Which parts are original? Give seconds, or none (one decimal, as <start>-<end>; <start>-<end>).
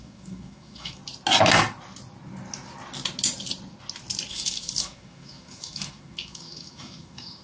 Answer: 1.0-4.3